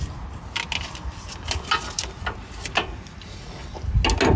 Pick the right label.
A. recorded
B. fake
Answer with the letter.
A